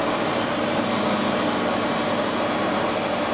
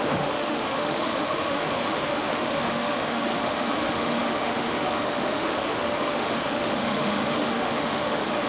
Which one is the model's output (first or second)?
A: second